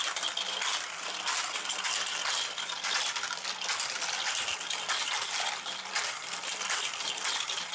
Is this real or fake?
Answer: real